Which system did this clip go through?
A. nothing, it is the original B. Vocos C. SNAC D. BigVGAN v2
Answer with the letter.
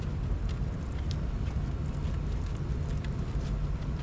A